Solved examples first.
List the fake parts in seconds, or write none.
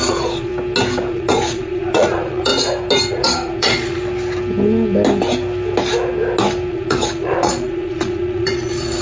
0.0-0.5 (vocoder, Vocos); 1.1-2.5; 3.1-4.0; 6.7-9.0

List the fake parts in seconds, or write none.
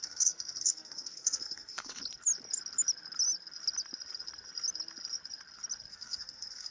0.0-2.0 (codec, SNAC); 5.9-6.7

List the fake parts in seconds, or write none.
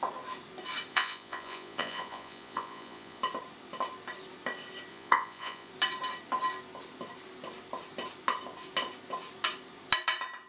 0.9-3.2 (vocoder, Vocos); 4.9-5.7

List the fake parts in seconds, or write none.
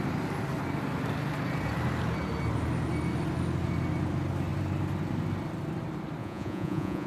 6.2-7.1 (vocoder, Vocos)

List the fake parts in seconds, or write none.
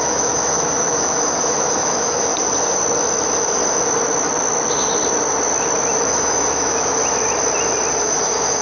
0.0-2.3 (autoencoder, DAC-VAE); 6.1-7.0; 8.0-8.6